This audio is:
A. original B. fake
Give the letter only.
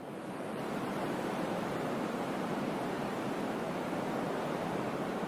B